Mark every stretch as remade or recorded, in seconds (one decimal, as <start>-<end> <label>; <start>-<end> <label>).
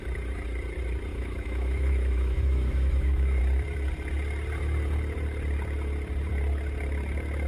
0.0-1.1 recorded; 1.1-3.4 remade; 3.4-7.5 recorded